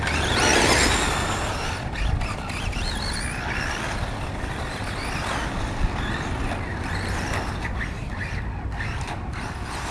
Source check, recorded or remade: recorded